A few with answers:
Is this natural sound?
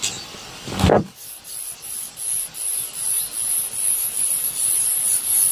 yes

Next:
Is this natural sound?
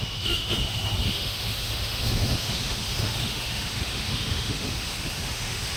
no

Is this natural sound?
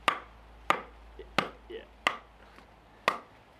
yes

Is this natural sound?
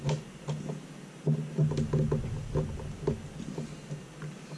yes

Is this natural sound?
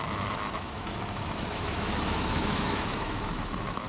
no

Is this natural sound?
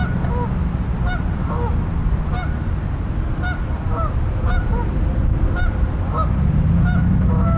yes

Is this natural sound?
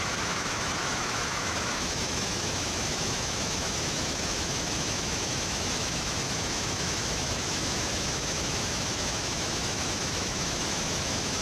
no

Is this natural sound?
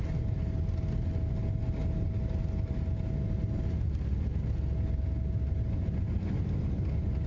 yes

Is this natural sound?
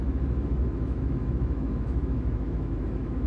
no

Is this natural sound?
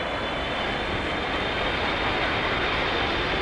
yes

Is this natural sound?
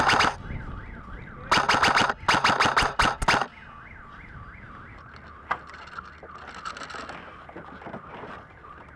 yes